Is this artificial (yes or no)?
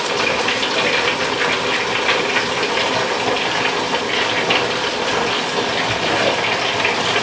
no